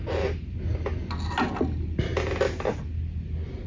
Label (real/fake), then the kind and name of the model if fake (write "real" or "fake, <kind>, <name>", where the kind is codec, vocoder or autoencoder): real